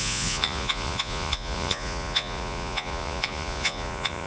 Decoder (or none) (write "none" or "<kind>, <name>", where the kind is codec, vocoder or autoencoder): vocoder, Vocos